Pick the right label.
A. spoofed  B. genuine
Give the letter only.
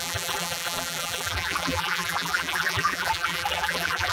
A